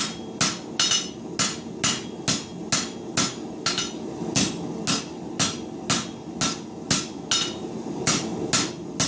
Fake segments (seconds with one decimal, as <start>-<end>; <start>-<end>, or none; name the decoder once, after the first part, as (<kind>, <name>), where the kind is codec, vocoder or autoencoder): none